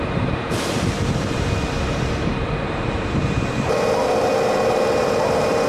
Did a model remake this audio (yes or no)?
yes